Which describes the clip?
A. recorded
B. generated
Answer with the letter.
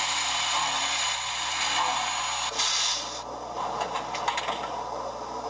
A